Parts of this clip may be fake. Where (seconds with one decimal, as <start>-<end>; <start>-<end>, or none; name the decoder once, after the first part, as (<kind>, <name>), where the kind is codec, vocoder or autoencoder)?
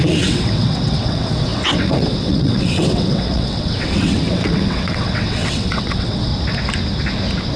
0.0-6.3 (vocoder, WaveNeXt)